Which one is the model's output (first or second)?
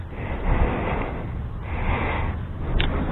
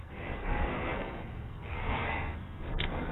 second